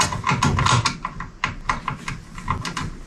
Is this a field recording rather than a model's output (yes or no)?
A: yes